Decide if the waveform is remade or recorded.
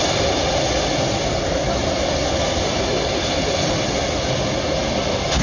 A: recorded